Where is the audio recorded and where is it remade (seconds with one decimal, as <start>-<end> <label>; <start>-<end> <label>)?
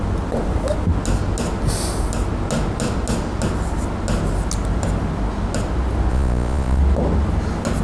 0.0-6.1 recorded; 6.1-6.8 remade; 6.8-7.8 recorded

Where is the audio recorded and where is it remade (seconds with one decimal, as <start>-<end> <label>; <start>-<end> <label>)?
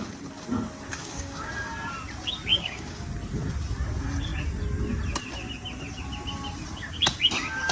0.0-1.0 recorded; 1.0-1.5 remade; 1.5-2.5 recorded; 2.5-3.1 remade; 3.1-7.7 recorded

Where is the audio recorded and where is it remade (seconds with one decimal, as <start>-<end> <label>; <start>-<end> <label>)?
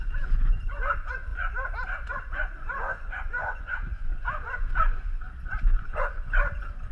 0.0-1.3 remade; 1.3-2.1 recorded; 2.1-6.9 remade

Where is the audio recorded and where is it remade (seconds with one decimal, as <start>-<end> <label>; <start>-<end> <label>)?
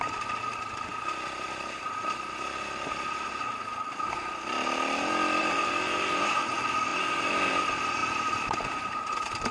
0.0-0.5 remade; 0.5-5.4 recorded; 5.4-9.5 remade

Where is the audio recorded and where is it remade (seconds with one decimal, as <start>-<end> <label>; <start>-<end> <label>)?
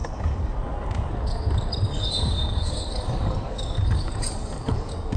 0.0-1.1 remade; 1.1-1.9 recorded; 1.9-5.2 remade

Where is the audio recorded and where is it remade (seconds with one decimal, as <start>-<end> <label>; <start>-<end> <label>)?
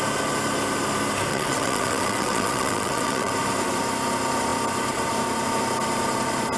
0.0-1.3 recorded; 1.3-3.3 remade; 3.3-6.6 recorded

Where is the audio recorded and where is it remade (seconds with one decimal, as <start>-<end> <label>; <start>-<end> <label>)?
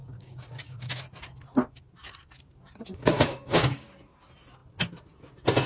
0.0-1.0 remade; 1.0-2.9 recorded; 2.9-3.9 remade; 3.9-5.7 recorded